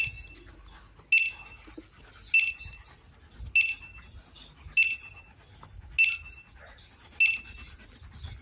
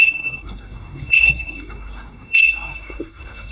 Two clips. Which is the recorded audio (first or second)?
first